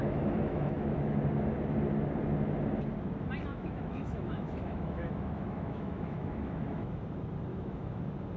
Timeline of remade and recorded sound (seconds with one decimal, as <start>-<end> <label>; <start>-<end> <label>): 0.0-1.2 remade; 1.2-3.5 recorded; 3.5-7.0 remade; 7.0-7.5 recorded; 7.5-8.0 remade; 8.0-8.4 recorded